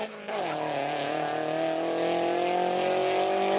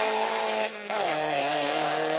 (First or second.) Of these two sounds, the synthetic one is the second